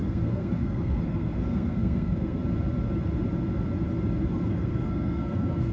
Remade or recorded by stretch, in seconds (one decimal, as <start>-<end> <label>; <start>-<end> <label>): 0.0-2.4 remade; 2.4-4.5 recorded; 4.5-5.7 remade